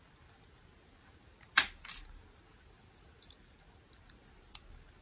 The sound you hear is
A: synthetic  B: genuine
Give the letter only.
B